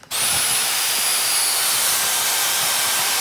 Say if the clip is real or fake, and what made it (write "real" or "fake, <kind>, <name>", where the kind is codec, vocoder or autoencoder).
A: real